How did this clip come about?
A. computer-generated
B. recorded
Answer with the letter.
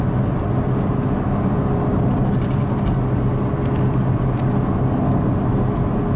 B